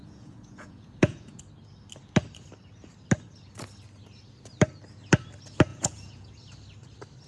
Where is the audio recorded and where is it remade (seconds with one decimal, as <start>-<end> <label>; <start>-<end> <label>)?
0.0-1.4 remade; 1.4-5.7 recorded; 5.7-6.3 remade; 6.3-7.3 recorded